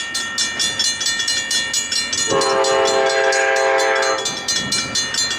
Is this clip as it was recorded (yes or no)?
yes